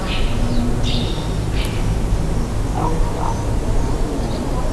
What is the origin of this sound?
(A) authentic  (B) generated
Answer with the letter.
A